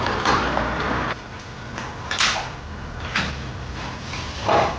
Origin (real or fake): real